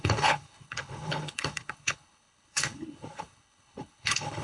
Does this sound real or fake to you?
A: fake